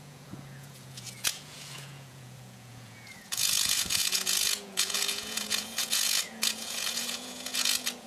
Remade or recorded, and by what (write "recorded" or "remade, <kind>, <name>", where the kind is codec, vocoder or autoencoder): remade, vocoder, Vocos